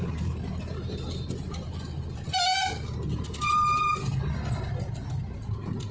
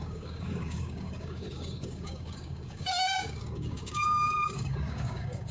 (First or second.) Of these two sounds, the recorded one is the first